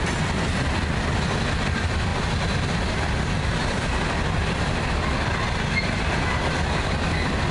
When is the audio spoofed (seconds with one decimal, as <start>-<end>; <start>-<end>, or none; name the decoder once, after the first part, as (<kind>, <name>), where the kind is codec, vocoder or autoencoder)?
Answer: none